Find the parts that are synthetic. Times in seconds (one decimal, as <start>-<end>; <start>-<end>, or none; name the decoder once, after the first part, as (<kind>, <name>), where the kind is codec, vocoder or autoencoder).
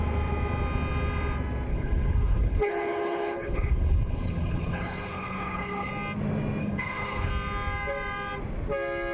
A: 1.7-5.9 (codec, HILCodec); 6.6-7.3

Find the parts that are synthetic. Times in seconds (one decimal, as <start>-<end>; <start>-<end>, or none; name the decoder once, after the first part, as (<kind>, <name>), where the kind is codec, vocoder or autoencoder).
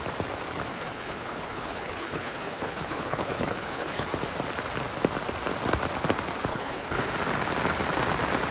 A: 0.7-4.1 (codec, HILCodec); 6.5-7.1